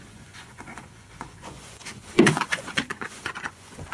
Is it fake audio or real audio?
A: fake